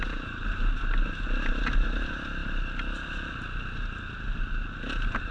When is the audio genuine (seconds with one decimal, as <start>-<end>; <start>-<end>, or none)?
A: 0.0-5.3